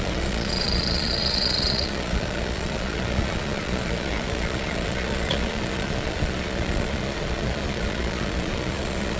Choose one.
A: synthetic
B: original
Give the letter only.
A